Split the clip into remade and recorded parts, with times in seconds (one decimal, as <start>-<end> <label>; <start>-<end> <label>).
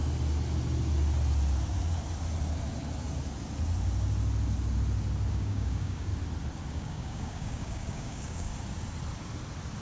0.0-5.3 recorded; 5.3-6.1 remade; 6.1-6.7 recorded; 6.7-8.5 remade; 8.5-9.8 recorded